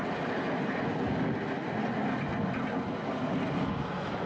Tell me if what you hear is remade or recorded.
recorded